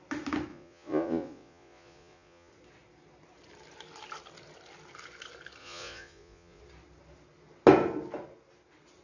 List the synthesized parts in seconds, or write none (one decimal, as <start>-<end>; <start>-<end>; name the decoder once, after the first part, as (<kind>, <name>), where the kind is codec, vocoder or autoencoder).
0.5-2.5 (vocoder, Vocos); 5.6-6.6